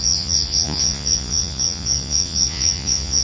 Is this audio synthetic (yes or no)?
yes